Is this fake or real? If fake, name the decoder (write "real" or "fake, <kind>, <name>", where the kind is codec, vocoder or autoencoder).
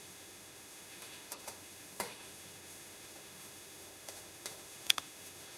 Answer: fake, autoencoder, DAC-VAE